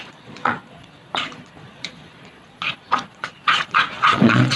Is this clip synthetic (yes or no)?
yes